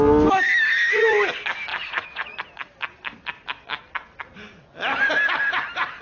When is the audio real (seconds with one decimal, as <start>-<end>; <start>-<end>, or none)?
0.0-1.7; 2.4-6.0